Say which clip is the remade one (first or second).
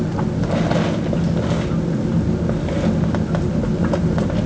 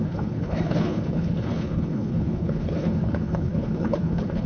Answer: second